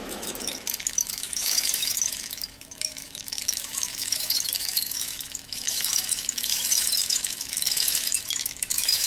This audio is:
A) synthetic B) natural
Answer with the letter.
A